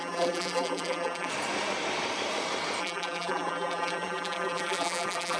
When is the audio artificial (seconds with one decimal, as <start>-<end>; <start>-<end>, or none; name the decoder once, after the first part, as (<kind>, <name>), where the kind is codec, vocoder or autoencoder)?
0.0-1.3 (vocoder, BigVGAN v2); 2.8-5.4